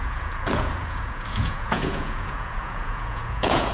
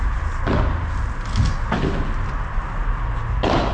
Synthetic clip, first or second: first